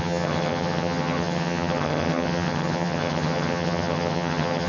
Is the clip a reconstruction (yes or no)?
yes